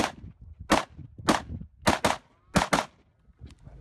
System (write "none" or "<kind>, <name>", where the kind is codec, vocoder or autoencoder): none